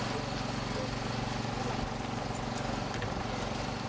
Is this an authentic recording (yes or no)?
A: yes